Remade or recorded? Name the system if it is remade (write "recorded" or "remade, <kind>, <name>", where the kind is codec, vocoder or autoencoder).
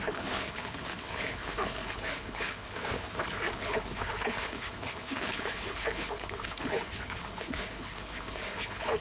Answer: remade, codec, HILCodec